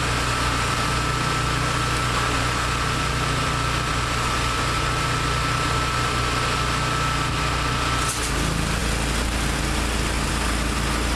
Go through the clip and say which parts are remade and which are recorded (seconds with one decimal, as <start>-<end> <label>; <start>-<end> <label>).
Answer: 0.0-11.2 recorded